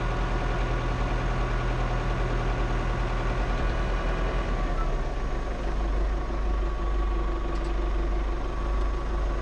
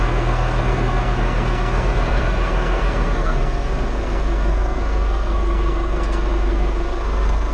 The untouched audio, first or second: first